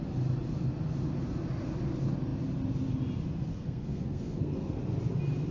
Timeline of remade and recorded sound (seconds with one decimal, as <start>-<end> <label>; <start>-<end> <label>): 0.0-3.5 recorded; 3.5-4.8 remade; 4.8-5.5 recorded